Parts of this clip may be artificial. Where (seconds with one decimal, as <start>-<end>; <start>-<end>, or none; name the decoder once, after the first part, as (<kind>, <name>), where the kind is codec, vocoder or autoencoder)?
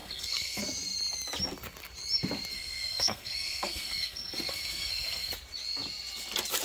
0.0-0.6 (codec, SNAC); 2.5-5.3